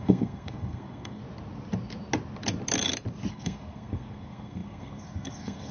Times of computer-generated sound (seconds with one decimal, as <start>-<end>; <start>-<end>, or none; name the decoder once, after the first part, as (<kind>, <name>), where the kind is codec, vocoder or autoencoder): 0.0-1.2 (codec, SNAC); 3.3-5.7

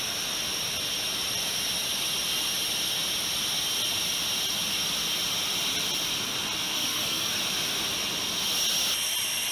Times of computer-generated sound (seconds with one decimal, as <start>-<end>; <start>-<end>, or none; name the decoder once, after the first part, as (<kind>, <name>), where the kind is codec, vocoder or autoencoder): 6.7-7.3 (codec, SNAC)

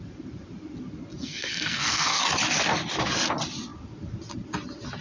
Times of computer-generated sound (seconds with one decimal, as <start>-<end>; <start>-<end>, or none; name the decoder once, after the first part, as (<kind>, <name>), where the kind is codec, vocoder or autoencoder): 1.2-2.2 (codec, SNAC)

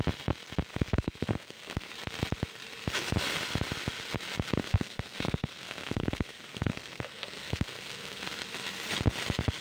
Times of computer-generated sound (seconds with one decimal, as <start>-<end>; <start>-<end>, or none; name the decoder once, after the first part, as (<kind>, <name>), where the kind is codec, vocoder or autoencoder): 0.7-1.9 (codec, SNAC); 4.6-8.2

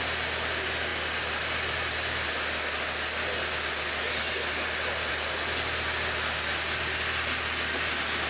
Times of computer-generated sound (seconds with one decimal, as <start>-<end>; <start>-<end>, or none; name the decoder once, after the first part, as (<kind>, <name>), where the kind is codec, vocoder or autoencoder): none

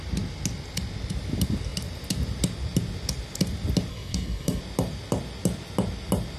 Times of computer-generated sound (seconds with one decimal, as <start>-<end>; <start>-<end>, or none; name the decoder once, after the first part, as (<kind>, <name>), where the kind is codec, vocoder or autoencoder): 3.9-4.6 (codec, SNAC)